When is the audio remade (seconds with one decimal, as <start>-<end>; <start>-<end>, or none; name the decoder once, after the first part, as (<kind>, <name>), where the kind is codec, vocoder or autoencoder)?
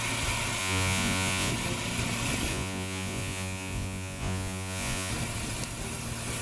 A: 0.6-1.5 (vocoder, Vocos); 2.5-5.1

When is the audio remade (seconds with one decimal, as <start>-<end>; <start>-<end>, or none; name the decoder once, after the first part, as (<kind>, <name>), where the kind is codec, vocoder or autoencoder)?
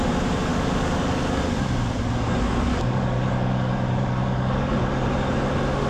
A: 0.5-1.4 (codec, DAC); 2.7-4.8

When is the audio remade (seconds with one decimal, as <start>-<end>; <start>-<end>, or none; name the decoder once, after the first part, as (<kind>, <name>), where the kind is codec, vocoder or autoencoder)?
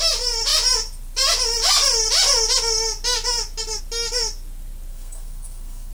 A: 4.9-5.9 (codec, SNAC)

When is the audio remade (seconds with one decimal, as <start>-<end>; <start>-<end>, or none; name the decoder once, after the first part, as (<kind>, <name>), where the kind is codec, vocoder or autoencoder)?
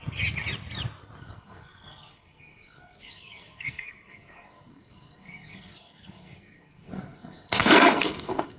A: 1.2-8.6 (codec, SNAC)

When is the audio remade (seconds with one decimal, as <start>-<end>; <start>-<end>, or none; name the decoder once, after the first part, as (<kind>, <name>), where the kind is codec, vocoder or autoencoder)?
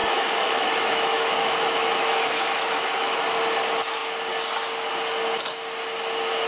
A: 0.0-3.2 (autoencoder, DAC-VAE)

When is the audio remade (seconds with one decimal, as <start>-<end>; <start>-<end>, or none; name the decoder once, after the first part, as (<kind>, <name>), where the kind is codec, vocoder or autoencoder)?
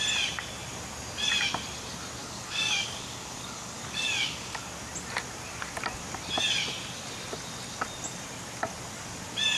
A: 2.2-4.6 (codec, DAC)